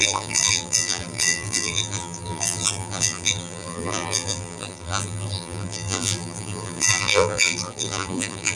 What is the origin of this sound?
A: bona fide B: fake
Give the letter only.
B